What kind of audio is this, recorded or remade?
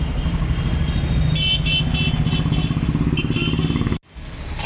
recorded